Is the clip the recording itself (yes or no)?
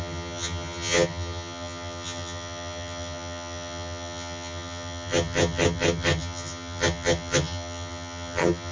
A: no